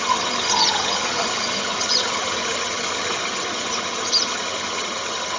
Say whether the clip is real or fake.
fake